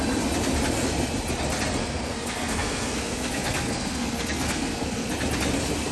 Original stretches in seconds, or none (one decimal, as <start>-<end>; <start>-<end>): 0.0-1.8; 5.1-5.9